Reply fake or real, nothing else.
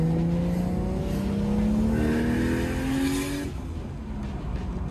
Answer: real